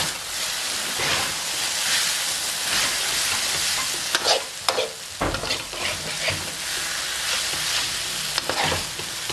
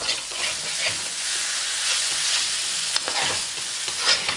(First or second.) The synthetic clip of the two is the second